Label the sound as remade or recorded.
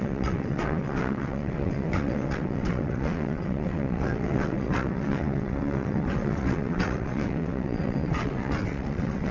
remade